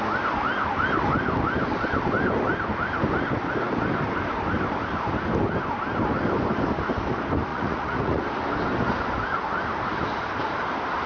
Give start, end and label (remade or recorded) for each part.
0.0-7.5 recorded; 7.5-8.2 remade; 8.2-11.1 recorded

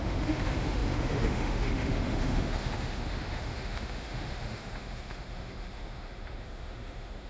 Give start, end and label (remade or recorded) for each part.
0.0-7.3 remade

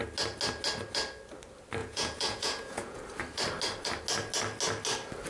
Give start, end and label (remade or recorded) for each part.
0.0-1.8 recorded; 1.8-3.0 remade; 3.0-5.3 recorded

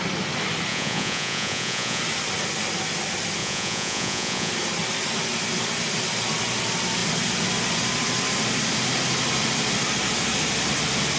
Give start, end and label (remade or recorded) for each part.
0.0-0.7 recorded; 0.7-2.0 remade; 2.0-3.4 recorded; 3.4-4.5 remade; 4.5-11.2 recorded